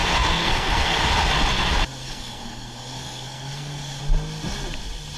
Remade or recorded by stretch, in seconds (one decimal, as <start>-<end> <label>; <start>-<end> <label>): 0.0-1.0 remade; 1.0-2.0 recorded; 2.0-4.0 remade; 4.0-5.2 recorded